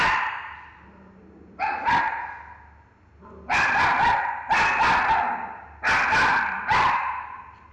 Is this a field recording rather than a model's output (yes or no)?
yes